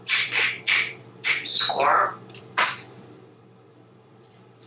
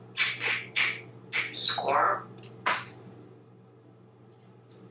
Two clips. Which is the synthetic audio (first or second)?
first